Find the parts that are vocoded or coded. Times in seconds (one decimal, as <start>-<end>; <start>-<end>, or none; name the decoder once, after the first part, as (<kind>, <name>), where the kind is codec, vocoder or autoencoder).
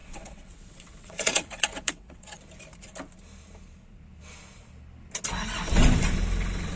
0.0-2.4 (vocoder, WaveNeXt)